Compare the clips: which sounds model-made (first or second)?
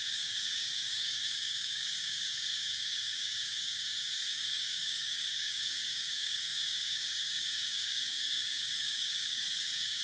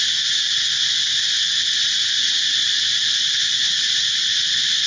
first